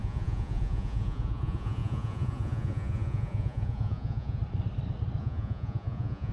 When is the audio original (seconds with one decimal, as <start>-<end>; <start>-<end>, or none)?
4.4-5.2